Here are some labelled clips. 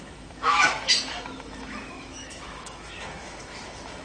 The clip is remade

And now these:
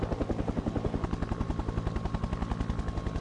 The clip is recorded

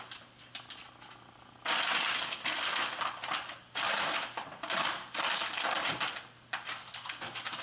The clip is recorded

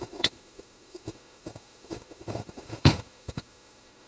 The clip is remade